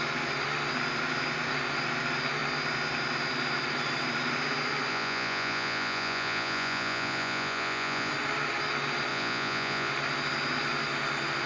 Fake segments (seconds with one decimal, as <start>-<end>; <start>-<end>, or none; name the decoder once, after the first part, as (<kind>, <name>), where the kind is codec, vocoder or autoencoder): 4.9-8.1 (vocoder, Vocos); 9.1-9.9